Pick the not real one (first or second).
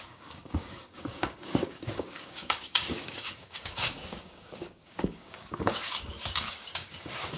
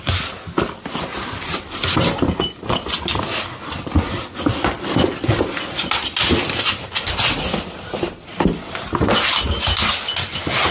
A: first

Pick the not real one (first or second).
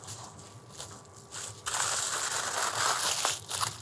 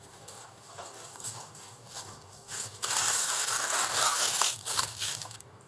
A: second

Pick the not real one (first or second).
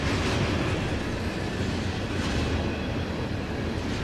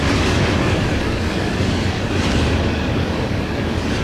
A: second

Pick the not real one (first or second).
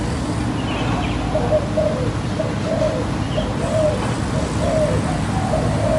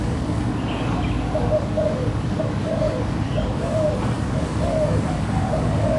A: second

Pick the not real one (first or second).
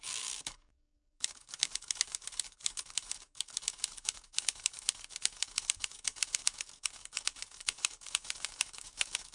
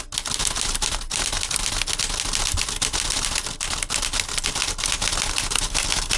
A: first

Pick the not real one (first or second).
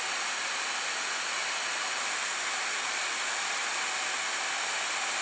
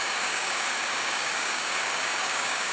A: second